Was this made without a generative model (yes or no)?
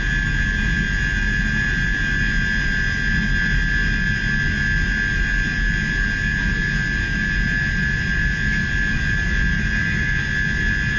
yes